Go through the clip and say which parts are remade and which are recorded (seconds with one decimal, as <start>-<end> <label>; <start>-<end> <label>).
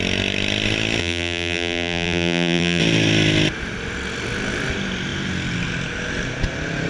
0.0-1.0 recorded; 1.0-2.8 remade; 2.8-6.9 recorded